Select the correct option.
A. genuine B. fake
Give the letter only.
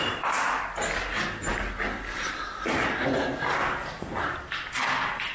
A